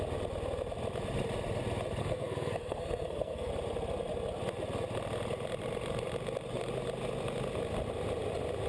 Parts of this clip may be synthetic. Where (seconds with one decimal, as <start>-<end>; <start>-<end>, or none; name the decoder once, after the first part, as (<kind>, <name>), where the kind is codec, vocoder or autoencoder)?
2.0-3.5 (codec, SNAC)